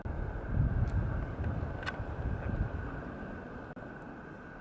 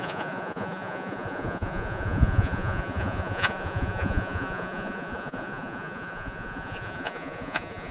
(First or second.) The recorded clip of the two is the first